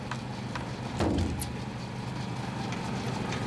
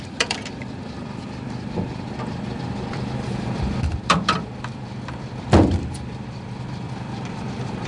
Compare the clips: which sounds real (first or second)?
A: first